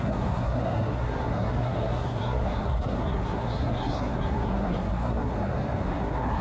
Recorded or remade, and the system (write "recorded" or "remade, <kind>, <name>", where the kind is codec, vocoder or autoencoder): remade, codec, SNAC